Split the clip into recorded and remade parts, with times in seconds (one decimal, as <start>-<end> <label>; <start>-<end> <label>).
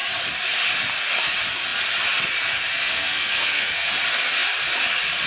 0.0-2.7 recorded; 2.7-3.9 remade; 3.9-5.3 recorded